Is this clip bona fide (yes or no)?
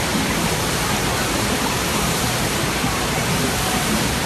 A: no